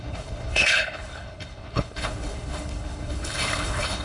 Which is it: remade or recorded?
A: remade